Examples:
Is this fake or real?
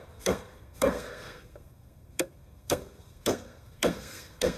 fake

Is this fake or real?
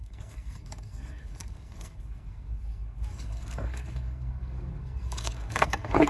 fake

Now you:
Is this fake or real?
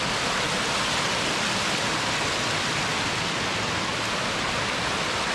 real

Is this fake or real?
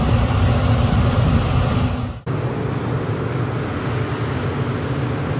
real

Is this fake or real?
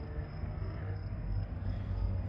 fake